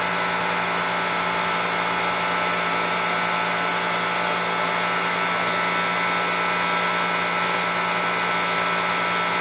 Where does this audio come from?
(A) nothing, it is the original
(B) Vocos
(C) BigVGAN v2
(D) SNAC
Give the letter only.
A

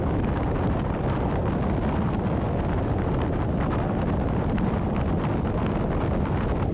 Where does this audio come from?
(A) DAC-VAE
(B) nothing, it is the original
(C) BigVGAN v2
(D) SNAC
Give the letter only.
B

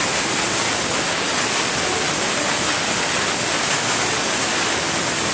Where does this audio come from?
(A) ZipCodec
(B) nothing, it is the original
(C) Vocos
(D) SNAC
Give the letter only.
B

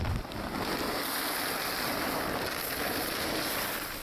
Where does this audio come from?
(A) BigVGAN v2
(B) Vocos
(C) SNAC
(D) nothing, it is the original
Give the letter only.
D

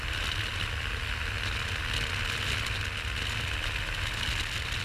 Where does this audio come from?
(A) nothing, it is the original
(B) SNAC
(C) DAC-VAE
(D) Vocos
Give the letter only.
A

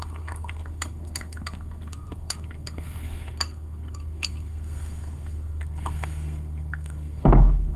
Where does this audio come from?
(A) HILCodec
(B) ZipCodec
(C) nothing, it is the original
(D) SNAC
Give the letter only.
D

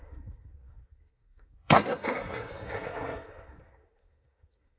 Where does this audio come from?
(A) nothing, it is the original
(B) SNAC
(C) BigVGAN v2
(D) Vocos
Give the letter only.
B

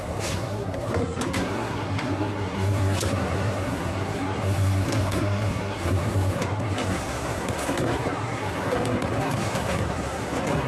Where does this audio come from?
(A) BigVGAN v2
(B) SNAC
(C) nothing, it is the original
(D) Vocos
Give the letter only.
B